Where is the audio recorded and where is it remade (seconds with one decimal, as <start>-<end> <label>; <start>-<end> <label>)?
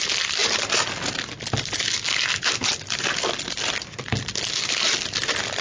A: 0.0-5.6 recorded